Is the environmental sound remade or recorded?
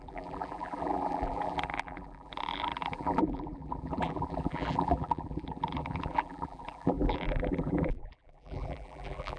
remade